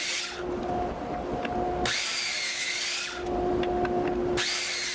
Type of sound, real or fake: real